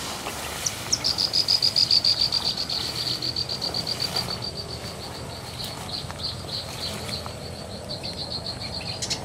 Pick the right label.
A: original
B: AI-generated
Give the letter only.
A